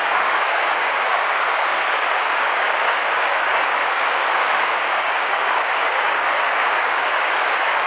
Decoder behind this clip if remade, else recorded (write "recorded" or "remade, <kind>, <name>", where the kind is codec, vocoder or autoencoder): remade, codec, DAC